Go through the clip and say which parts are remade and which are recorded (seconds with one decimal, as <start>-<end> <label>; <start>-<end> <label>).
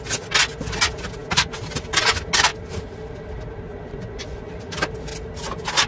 0.0-3.7 recorded; 3.7-4.5 remade; 4.5-5.9 recorded